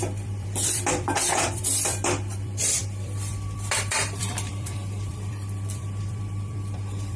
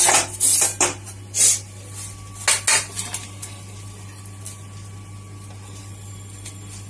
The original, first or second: second